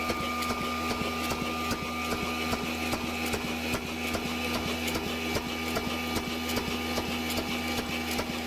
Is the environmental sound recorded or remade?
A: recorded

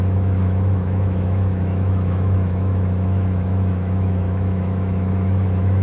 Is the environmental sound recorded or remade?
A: remade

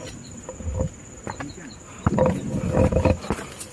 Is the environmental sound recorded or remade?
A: recorded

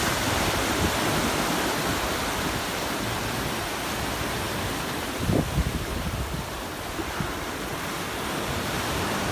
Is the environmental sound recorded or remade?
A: recorded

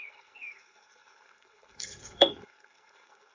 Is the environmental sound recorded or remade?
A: remade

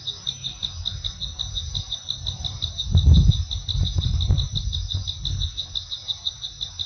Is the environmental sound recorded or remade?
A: recorded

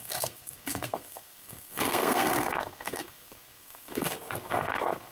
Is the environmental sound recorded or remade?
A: remade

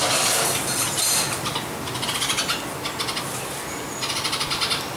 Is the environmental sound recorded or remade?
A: recorded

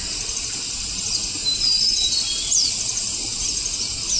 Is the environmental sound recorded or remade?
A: recorded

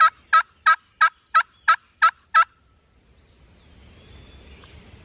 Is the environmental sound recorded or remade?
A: recorded